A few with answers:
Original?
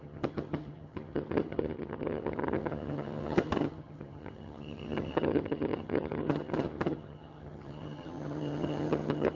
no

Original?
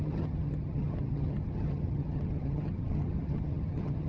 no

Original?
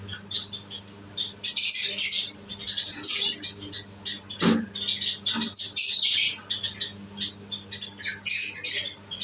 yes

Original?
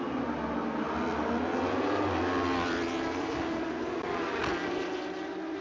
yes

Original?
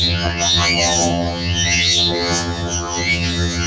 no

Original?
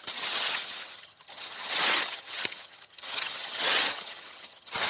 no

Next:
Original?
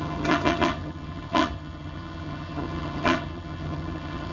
no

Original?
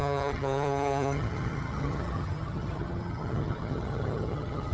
no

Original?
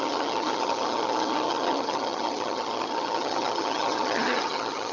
no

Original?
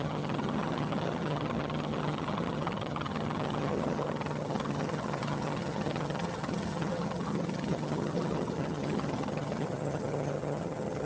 no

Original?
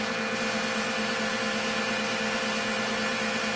yes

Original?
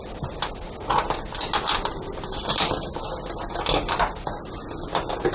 yes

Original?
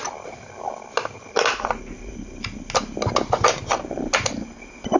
yes